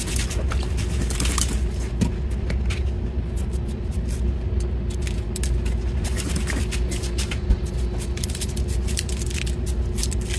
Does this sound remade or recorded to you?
recorded